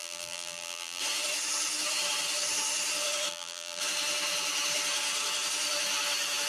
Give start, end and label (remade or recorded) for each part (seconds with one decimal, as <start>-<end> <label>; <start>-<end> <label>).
0.0-1.0 remade; 1.0-3.3 recorded; 3.3-3.8 remade; 3.8-6.5 recorded